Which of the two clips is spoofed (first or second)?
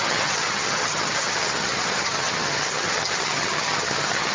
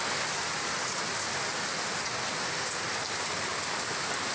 first